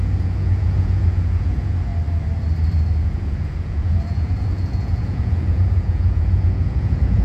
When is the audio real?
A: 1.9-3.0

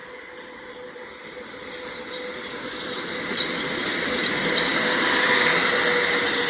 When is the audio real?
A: 0.0-6.5